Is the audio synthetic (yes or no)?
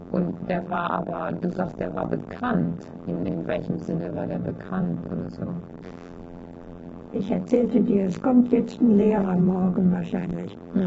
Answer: yes